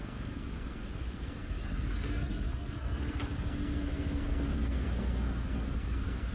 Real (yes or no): no